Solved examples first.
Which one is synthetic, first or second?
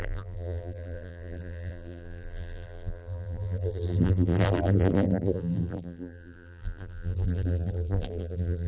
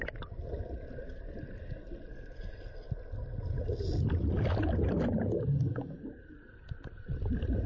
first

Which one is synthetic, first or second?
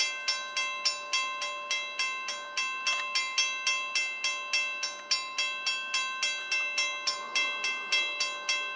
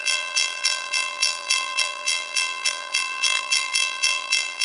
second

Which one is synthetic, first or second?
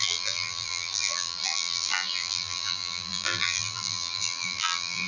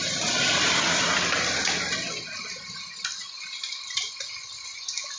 first